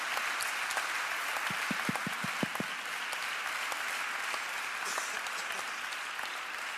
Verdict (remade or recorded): recorded